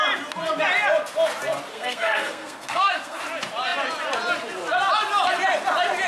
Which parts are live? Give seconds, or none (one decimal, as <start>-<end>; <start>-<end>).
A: 0.0-1.7; 3.2-6.1

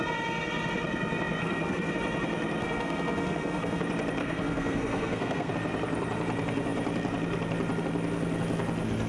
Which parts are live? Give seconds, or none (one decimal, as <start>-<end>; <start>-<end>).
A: 0.0-1.4; 1.9-2.6; 3.8-4.2; 5.5-9.1